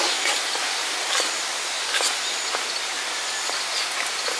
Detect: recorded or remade recorded